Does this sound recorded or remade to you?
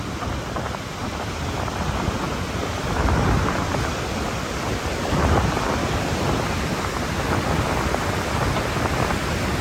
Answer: recorded